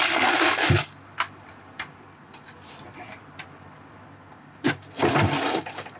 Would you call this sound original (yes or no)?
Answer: yes